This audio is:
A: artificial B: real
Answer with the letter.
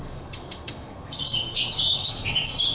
A